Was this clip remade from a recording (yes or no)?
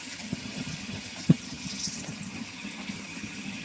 yes